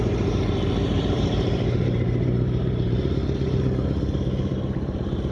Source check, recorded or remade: remade